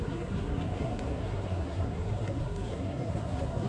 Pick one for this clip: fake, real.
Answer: fake